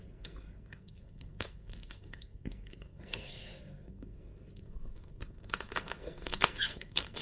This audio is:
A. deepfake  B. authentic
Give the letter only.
A